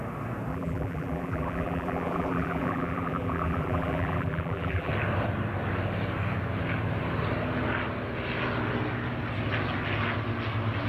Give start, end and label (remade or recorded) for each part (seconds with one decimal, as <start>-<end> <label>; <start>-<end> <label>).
0.0-0.5 recorded; 0.5-4.9 remade; 4.9-10.9 recorded